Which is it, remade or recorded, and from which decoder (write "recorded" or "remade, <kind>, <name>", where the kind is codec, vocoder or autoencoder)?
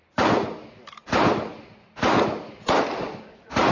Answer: recorded